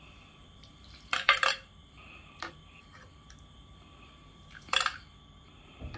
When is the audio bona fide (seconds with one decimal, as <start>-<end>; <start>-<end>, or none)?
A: none